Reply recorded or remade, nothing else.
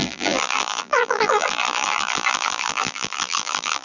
remade